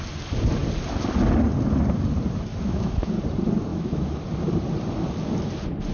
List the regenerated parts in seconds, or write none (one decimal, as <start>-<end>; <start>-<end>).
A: 2.5-3.1; 3.7-4.2